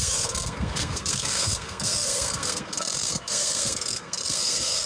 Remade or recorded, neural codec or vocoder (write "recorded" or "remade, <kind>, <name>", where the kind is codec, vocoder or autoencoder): remade, codec, SNAC